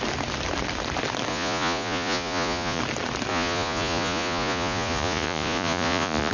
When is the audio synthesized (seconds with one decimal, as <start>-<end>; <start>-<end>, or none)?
1.3-2.8; 3.3-6.3